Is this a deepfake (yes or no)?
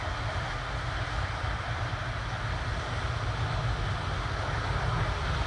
no